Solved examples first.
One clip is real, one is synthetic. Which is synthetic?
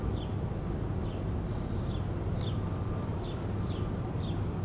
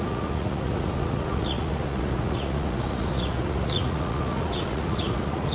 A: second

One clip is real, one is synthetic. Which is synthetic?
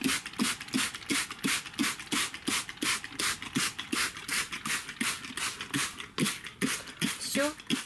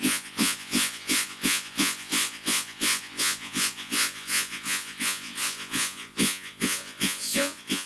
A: second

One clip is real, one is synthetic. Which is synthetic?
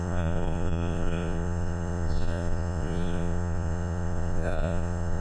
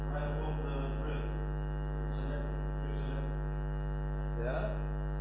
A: first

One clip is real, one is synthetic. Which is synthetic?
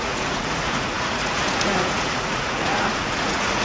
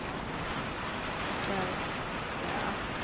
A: first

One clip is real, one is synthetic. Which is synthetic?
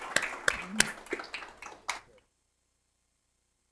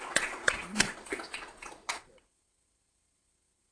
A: second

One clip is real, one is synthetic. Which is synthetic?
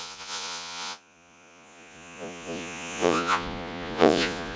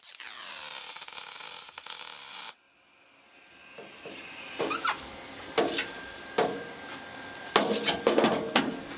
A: first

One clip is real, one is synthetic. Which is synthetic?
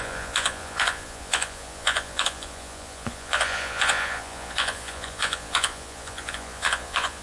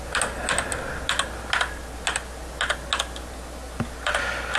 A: first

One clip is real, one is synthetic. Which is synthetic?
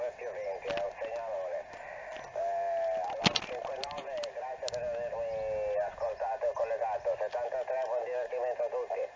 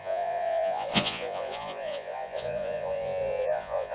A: second